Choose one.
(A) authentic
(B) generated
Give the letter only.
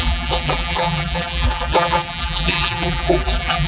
B